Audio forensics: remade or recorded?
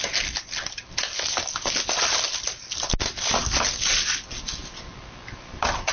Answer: recorded